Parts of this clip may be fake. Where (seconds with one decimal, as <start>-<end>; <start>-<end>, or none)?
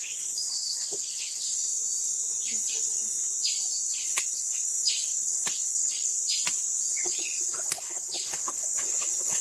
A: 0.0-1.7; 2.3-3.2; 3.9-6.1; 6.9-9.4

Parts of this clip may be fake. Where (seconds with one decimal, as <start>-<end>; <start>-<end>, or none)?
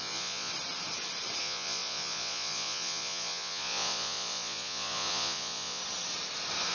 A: 0.0-0.5; 1.4-5.8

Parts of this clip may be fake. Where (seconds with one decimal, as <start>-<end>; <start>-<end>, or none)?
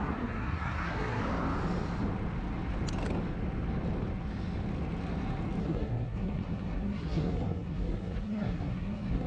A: 0.0-1.2; 5.6-9.3